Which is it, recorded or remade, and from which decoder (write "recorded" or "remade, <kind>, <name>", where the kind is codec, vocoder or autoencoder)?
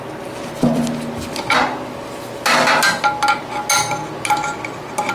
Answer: recorded